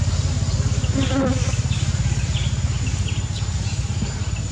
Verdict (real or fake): real